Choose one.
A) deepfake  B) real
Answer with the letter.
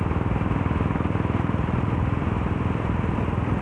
B